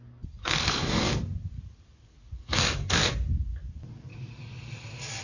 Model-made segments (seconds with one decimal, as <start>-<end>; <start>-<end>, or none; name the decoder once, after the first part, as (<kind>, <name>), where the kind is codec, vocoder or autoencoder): 0.4-1.2 (codec, SNAC); 2.4-3.1